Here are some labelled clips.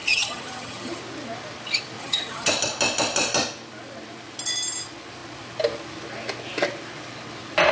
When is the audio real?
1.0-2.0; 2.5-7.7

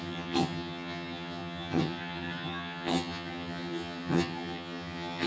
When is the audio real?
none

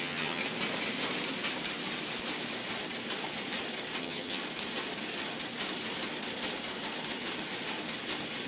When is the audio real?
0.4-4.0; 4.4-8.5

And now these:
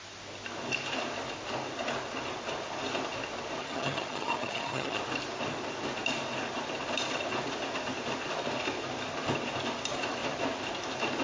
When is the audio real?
0.0-3.6; 5.0-11.2

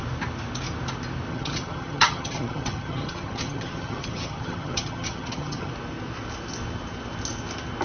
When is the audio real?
0.0-1.3; 5.7-7.8